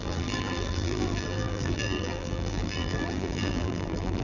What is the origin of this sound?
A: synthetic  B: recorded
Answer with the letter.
A